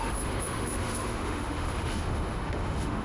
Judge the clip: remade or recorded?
remade